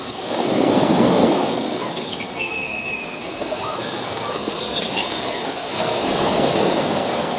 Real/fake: fake